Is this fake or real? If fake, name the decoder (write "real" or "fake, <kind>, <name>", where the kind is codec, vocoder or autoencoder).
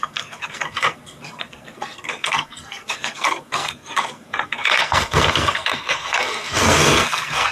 fake, codec, SNAC